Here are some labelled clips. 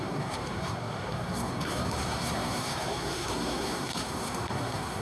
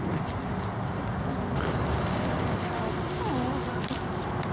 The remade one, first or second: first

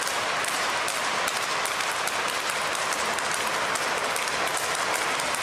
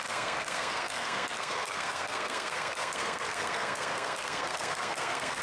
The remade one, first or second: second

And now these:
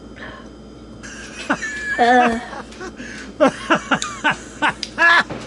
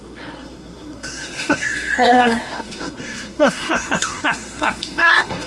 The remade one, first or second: second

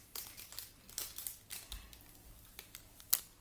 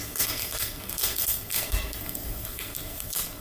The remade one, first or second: second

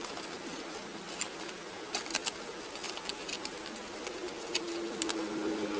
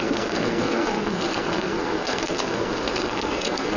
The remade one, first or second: second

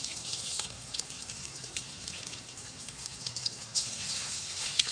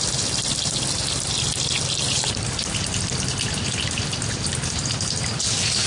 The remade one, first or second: first